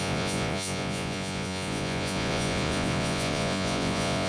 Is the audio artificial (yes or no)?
yes